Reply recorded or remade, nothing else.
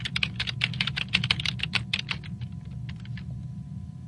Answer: remade